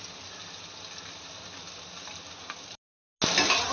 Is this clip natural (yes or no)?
yes